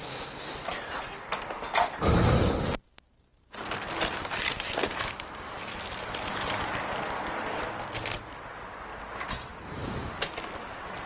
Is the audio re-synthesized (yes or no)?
no